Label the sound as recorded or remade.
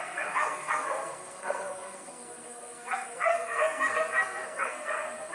remade